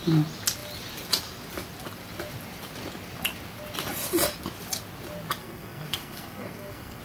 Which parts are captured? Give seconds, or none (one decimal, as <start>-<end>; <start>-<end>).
0.0-5.4